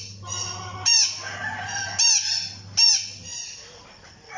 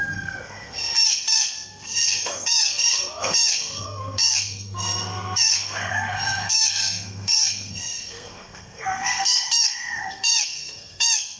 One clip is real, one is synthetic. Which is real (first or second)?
first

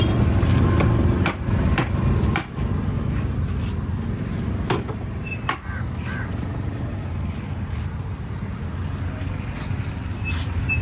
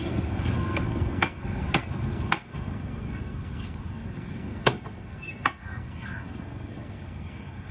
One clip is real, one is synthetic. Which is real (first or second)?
first